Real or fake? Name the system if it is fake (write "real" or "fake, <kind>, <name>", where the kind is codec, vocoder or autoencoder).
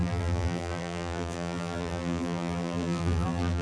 fake, vocoder, BigVGAN v2